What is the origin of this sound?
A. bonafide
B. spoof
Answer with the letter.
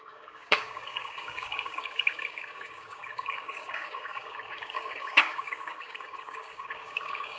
B